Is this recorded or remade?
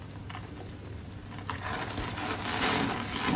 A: recorded